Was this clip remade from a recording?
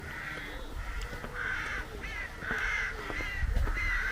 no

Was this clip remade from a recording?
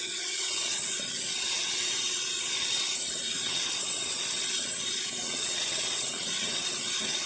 yes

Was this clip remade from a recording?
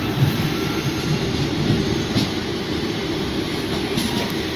yes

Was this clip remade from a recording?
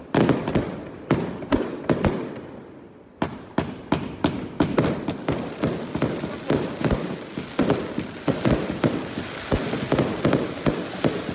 no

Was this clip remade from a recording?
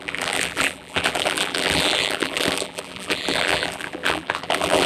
yes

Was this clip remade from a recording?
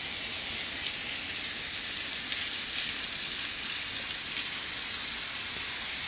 no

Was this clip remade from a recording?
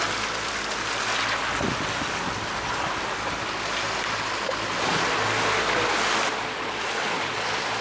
no